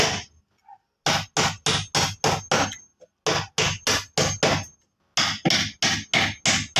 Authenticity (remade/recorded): recorded